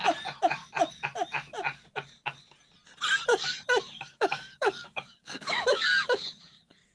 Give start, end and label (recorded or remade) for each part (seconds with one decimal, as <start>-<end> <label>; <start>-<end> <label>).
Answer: 0.0-3.3 recorded; 3.3-6.9 remade